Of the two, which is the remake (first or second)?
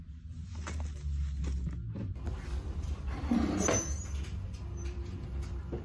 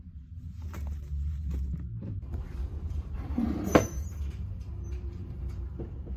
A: second